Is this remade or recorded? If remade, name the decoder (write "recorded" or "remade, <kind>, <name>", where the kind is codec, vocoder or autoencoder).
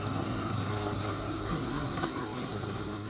remade, codec, SNAC